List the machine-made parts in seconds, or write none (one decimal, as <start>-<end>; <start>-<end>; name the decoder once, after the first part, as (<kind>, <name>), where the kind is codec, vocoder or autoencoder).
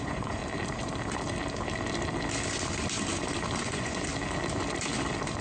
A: 0.0-0.4 (vocoder, Vocos); 3.6-4.1